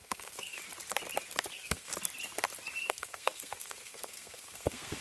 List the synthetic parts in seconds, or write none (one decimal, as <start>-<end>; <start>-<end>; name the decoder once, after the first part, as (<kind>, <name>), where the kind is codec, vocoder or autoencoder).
0.0-0.6 (codec, SNAC); 1.5-1.9; 2.8-5.0